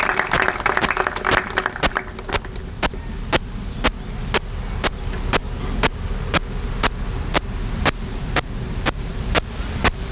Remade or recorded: recorded